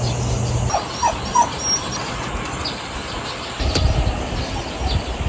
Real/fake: real